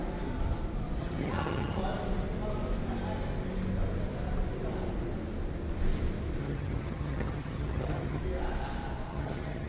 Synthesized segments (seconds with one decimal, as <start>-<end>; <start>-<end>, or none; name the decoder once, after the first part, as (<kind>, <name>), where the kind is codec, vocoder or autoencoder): 1.0-1.8 (vocoder, HiFi-GAN); 6.4-8.2; 9.1-9.7

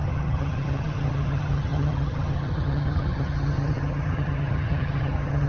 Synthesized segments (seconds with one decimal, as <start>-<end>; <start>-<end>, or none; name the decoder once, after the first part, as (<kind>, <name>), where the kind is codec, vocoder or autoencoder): 0.0-5.5 (vocoder, HiFi-GAN)

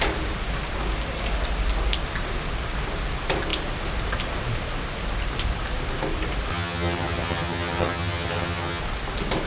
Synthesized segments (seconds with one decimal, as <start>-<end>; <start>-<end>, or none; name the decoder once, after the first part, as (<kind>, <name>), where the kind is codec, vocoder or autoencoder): 6.5-8.8 (vocoder, HiFi-GAN)

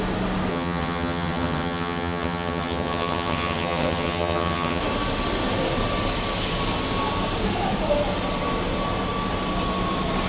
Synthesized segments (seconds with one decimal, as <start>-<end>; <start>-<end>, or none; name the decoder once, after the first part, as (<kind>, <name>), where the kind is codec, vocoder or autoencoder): 0.5-4.8 (vocoder, HiFi-GAN)

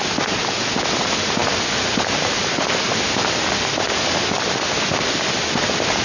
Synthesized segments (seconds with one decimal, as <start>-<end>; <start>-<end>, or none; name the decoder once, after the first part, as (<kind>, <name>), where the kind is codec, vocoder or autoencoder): none

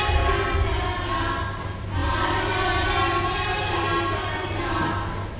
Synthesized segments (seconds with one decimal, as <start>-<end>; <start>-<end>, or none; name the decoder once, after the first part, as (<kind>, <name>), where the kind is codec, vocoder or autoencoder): none

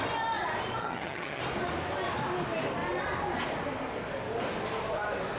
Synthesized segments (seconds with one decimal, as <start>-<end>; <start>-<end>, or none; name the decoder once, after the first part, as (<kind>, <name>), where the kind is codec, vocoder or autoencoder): 0.8-1.4 (vocoder, HiFi-GAN)

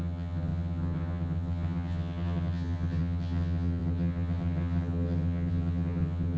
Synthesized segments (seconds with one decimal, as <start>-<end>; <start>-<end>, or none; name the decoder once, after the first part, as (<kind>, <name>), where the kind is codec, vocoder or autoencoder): 0.0-6.4 (vocoder, HiFi-GAN)